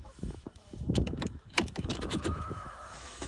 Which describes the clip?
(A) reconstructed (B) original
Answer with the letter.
A